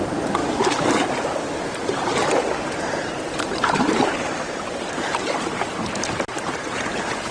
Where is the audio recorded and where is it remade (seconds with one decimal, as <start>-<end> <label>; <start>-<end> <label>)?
0.0-0.4 remade; 0.4-2.6 recorded; 2.6-7.3 remade